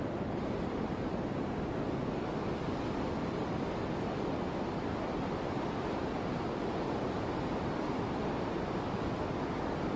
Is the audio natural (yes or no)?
yes